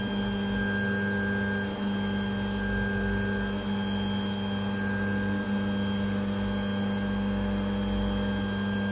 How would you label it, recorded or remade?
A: recorded